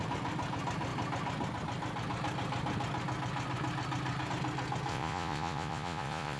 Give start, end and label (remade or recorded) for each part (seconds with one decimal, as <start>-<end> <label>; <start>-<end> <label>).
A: 0.0-4.9 recorded; 4.9-6.4 remade